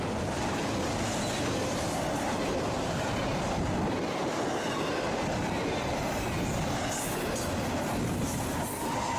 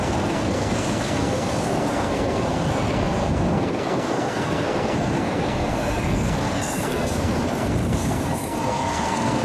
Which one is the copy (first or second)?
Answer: second